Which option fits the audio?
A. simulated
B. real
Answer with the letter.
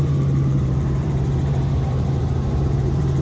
A